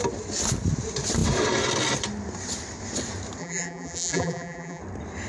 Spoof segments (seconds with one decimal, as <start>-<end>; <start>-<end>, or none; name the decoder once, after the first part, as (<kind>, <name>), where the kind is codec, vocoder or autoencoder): 3.4-4.8 (vocoder, BigVGAN v2)